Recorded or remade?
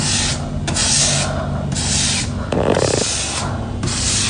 recorded